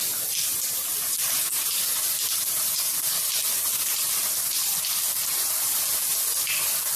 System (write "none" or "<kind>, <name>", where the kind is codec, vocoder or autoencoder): none